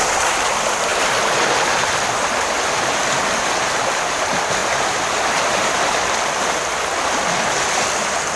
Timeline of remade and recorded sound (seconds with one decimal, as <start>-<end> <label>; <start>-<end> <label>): 0.0-8.4 recorded